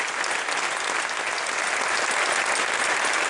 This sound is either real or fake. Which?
real